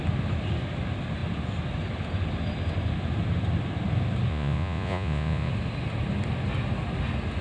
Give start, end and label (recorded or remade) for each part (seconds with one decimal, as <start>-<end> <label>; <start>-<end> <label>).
0.0-4.3 recorded; 4.3-5.5 remade; 5.5-7.4 recorded